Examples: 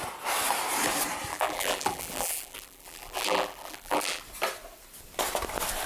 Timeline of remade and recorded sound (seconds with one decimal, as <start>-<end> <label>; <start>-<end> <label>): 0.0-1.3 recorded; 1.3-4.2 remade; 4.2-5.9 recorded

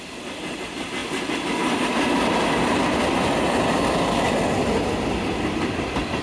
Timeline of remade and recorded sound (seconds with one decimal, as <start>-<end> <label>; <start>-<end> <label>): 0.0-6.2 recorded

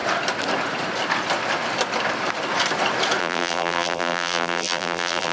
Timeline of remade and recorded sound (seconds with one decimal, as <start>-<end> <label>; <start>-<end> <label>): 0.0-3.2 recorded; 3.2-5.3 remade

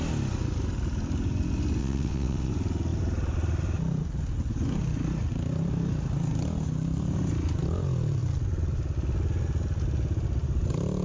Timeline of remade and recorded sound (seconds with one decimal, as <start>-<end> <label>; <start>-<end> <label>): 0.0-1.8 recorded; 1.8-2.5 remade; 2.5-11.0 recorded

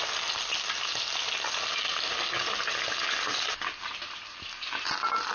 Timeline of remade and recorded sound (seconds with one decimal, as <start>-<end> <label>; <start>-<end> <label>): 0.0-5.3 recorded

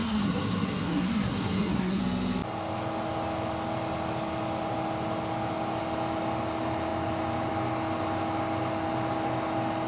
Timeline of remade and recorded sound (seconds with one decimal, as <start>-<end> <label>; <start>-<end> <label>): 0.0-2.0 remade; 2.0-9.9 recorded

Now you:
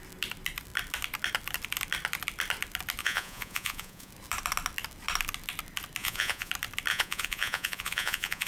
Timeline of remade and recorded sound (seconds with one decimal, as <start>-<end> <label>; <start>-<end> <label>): 0.0-3.0 recorded; 3.0-4.1 remade; 4.1-6.0 recorded; 6.0-6.5 remade; 6.5-6.9 recorded; 6.9-8.5 remade